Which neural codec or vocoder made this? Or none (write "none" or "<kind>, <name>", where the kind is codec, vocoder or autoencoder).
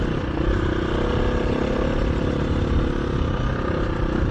none